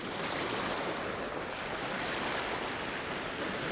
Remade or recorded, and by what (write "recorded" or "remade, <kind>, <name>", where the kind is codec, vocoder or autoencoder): recorded